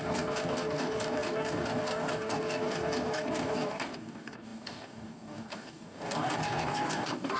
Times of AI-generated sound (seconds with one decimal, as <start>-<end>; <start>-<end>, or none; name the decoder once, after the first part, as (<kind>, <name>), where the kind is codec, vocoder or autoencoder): 0.0-7.4 (codec, DAC)